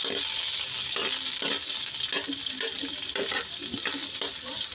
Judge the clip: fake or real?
real